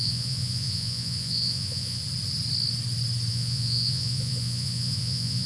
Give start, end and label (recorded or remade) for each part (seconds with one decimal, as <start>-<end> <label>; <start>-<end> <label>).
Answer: 0.0-2.0 remade; 2.0-3.3 recorded; 3.3-5.5 remade